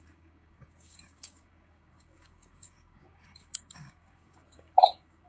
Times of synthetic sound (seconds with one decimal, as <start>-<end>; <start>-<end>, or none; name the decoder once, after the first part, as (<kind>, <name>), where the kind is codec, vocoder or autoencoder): 0.0-5.3 (codec, DAC)